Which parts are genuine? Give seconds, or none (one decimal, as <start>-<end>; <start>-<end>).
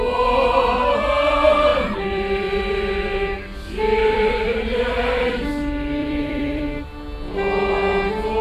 0.0-1.7; 2.6-4.0; 5.5-6.0; 6.6-8.4